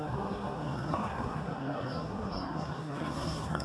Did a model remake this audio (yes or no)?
yes